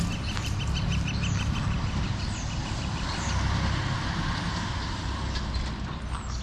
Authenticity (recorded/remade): recorded